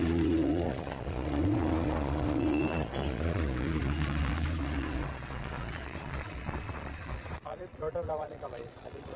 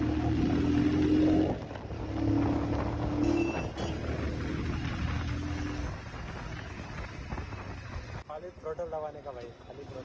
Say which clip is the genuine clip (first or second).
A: second